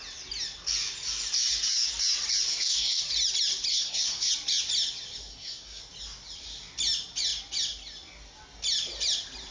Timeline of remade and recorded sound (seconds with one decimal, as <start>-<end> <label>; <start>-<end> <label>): 0.0-2.5 recorded; 2.5-3.0 remade; 3.0-3.7 recorded; 3.7-4.3 remade; 4.3-5.3 recorded; 5.3-5.8 remade; 5.8-9.5 recorded